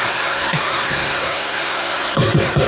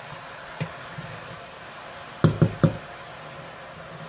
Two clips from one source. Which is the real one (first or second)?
second